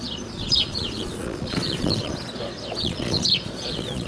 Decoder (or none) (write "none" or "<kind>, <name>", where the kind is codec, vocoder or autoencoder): vocoder, Vocos